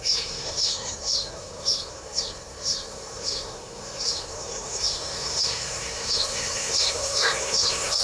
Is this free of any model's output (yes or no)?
no